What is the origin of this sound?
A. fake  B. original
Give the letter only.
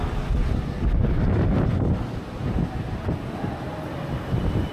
B